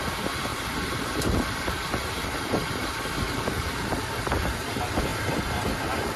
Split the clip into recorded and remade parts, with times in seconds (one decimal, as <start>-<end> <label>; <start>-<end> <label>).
0.0-0.5 recorded; 0.5-4.2 remade; 4.2-5.1 recorded; 5.1-5.8 remade; 5.8-6.2 recorded